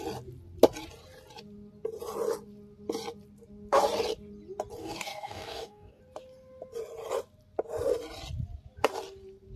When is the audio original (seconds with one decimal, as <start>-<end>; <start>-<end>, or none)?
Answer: 0.0-4.8; 6.0-9.6